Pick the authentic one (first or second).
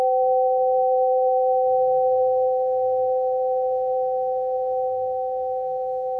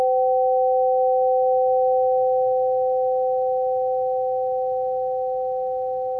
second